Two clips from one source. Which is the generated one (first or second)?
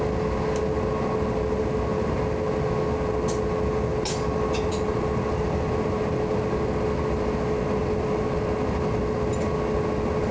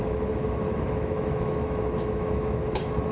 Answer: second